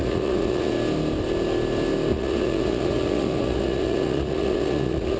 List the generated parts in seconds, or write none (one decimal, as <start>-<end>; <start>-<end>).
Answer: 0.0-0.7; 2.1-5.2